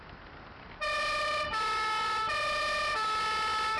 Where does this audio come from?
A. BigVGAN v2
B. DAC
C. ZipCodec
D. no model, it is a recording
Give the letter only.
D